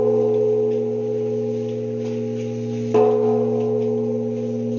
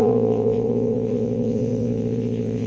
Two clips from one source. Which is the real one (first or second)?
first